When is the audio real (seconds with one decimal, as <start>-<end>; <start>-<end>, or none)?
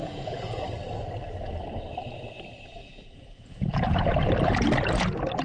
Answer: 0.6-2.8; 4.0-5.4